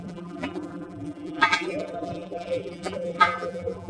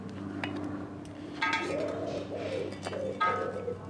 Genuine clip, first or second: second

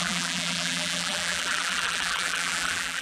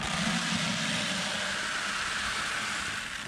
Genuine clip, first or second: second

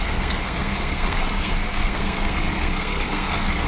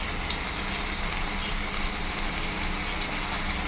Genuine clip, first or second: second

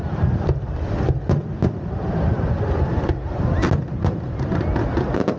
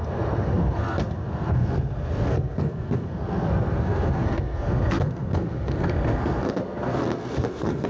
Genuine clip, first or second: first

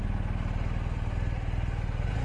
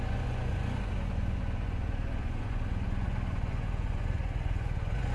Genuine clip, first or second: first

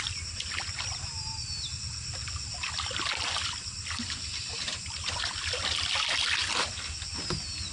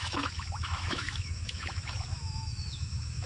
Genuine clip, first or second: first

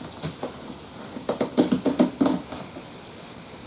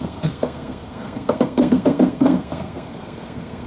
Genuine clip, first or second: first